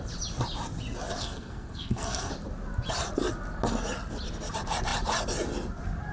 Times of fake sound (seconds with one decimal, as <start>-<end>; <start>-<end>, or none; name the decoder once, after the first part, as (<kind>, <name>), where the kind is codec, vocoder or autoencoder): 1.2-2.3 (codec, SNAC)